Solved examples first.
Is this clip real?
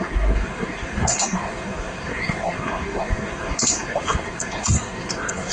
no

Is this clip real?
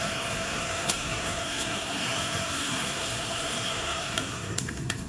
no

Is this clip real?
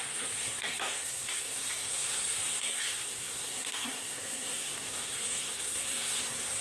no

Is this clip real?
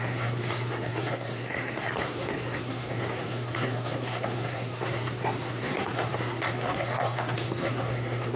no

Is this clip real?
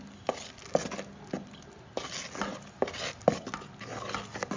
yes